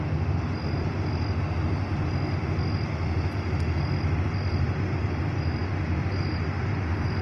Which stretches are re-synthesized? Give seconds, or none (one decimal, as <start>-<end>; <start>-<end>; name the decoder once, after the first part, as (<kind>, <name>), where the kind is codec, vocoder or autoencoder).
none